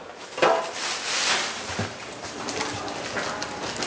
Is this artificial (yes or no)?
no